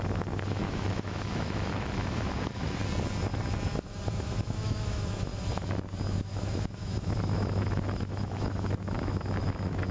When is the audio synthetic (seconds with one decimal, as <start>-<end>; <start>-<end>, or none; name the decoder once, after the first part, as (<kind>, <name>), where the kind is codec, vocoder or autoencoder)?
0.0-2.8 (autoencoder, DAC-VAE); 4.1-5.3; 6.1-9.9